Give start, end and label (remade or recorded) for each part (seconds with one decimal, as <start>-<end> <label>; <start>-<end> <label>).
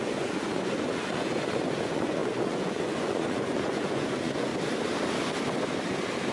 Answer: 0.0-4.5 remade; 4.5-6.3 recorded